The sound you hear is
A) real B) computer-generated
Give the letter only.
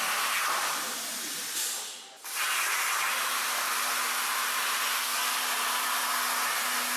A